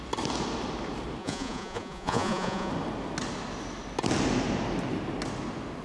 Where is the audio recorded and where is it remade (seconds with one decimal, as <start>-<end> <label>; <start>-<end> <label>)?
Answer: 0.0-1.2 recorded; 1.2-2.7 remade; 2.7-5.8 recorded